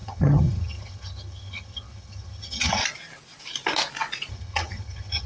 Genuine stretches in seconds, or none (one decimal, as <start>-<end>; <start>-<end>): 2.8-4.3